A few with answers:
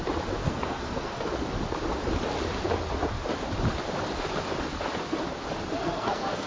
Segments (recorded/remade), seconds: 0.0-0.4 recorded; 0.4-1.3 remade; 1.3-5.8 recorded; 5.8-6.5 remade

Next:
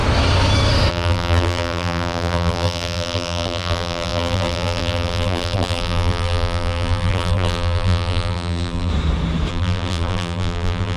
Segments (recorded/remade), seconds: 0.0-0.9 recorded; 0.9-8.9 remade; 8.9-9.5 recorded; 9.5-11.0 remade

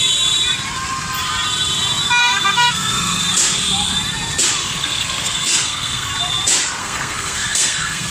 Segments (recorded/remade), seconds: 0.0-2.2 recorded; 2.2-3.2 remade; 3.2-4.6 recorded; 4.6-6.1 remade; 6.1-6.8 recorded; 6.8-8.1 remade

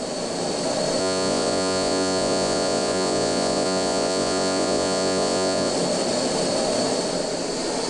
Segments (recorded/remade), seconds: 0.0-1.0 recorded; 1.0-5.7 remade; 5.7-7.9 recorded